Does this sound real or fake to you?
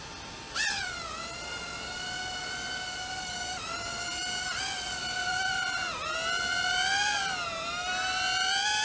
real